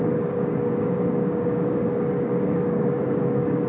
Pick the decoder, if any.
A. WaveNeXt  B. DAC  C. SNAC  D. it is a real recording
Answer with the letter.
B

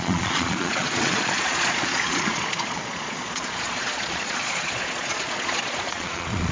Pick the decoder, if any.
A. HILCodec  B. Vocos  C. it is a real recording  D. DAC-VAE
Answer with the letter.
B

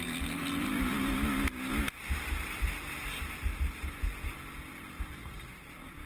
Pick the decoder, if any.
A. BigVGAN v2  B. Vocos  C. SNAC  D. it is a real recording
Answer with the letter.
D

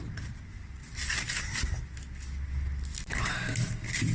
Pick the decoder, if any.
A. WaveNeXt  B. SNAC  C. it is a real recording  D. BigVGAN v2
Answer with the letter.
C